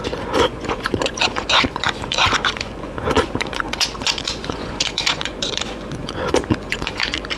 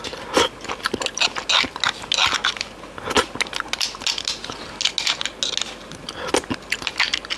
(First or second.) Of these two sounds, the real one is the second